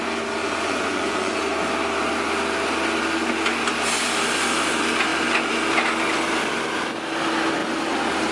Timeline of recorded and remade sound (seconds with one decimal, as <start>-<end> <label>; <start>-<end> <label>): 0.0-0.4 recorded; 0.4-1.4 remade; 1.4-8.3 recorded